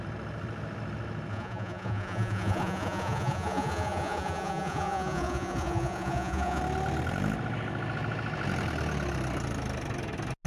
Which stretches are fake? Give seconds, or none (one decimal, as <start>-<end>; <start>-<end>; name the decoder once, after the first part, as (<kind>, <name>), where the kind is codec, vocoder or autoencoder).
1.3-6.6 (vocoder, Vocos)